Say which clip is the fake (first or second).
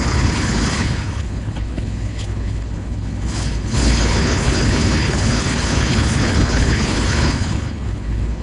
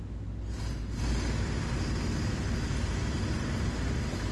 first